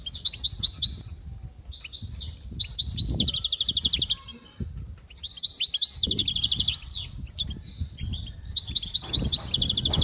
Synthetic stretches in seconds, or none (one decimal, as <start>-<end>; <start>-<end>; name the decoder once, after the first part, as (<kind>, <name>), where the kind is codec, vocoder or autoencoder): none